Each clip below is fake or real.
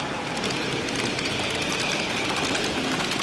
real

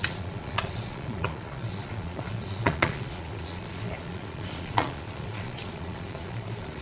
fake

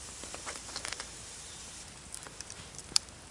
fake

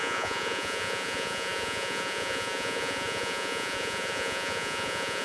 fake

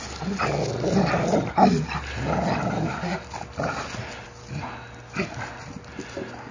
real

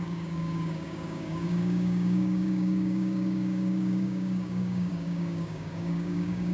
fake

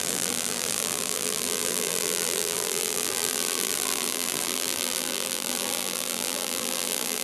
fake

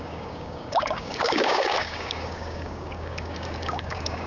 fake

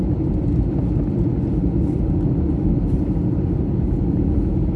real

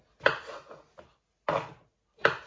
real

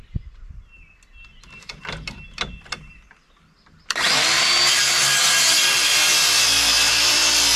real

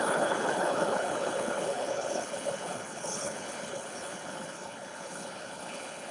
fake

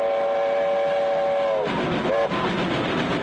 real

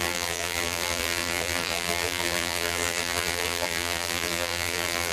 fake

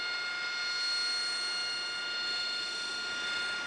real